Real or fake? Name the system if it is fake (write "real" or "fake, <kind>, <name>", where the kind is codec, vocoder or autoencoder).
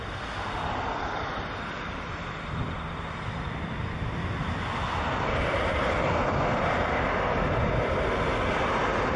real